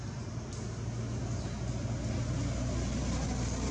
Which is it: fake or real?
real